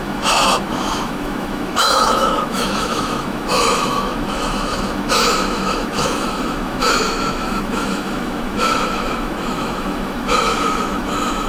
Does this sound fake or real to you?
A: fake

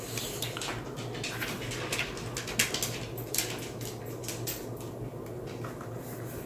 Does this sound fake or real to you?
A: real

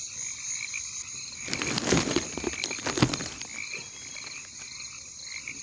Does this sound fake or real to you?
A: real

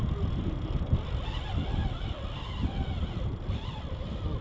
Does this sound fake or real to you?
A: real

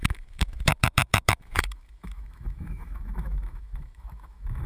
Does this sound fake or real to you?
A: fake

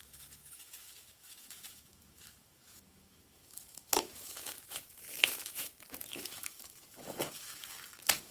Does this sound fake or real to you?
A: fake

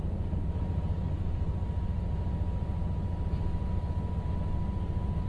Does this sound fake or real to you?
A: real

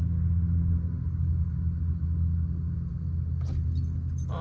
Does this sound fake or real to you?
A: real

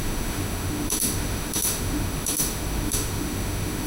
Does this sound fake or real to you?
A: fake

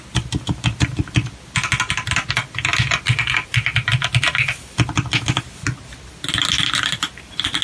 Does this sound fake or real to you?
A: real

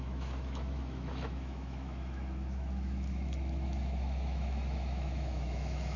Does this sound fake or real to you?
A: fake